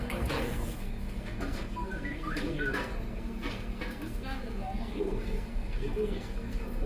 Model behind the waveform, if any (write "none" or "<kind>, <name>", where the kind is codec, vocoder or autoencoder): codec, SNAC